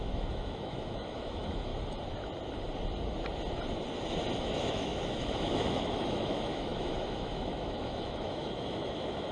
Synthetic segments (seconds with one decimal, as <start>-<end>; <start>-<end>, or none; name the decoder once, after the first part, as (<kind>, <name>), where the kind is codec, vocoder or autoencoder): 0.0-1.7 (autoencoder, DAC-VAE); 4.4-9.3